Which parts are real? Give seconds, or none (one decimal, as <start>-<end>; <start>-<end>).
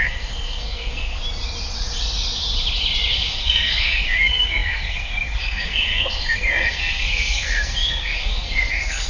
1.2-3.1